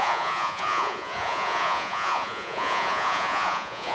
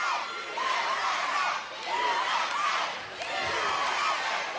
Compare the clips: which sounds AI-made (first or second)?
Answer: first